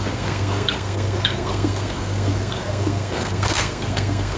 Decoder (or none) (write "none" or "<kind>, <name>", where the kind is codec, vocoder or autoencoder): codec, SNAC